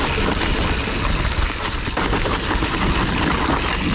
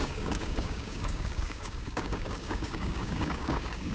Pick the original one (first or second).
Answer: first